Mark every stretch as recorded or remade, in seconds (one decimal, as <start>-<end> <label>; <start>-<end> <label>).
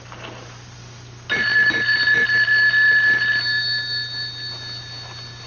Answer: 0.0-5.5 recorded